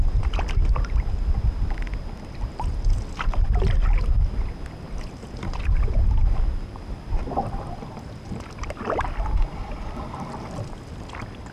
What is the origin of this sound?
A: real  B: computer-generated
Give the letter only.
A